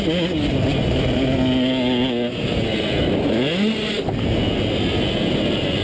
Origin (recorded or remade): recorded